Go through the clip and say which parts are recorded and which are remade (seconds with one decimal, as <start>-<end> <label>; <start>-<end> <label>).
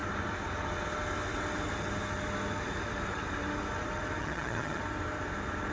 0.0-4.2 recorded; 4.2-4.8 remade; 4.8-5.7 recorded